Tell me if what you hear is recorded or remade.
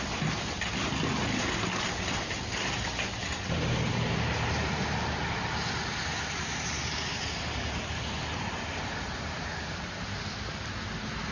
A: recorded